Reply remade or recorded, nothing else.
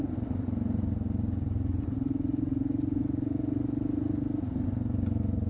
recorded